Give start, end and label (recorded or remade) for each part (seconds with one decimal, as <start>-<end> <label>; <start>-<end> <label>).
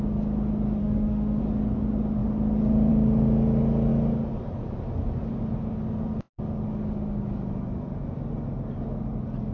0.0-0.8 recorded; 0.8-1.4 remade; 1.4-9.5 recorded